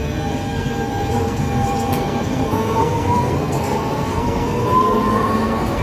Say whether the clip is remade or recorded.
remade